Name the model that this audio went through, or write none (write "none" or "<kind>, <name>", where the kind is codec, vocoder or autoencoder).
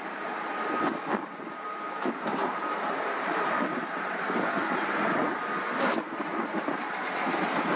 none